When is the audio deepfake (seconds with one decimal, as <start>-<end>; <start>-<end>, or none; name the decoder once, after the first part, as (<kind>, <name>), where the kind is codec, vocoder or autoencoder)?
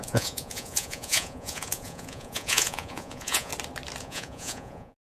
0.0-3.5 (vocoder, Vocos); 4.0-5.2